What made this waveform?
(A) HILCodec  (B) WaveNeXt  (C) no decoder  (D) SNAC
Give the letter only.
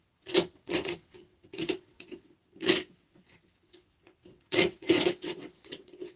B